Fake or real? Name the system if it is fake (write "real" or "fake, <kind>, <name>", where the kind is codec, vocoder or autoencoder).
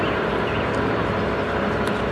real